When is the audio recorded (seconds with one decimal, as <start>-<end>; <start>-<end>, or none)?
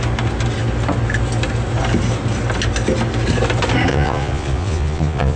0.0-3.9